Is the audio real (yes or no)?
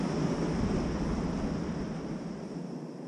yes